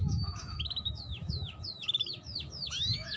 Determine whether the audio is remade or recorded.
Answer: remade